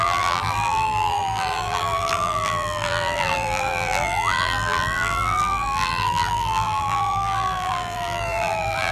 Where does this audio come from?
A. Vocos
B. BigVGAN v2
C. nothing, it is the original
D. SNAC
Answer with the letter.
B